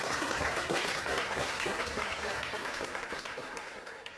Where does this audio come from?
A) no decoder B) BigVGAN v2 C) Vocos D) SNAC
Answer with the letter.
D